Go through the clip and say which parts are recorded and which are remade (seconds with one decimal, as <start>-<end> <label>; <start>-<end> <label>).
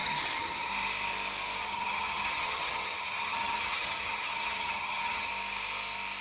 0.0-0.7 remade; 0.7-1.6 recorded; 1.6-5.3 remade; 5.3-6.2 recorded